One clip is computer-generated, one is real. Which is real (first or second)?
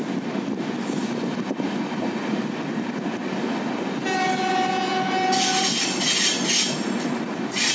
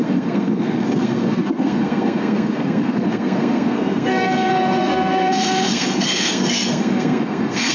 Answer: first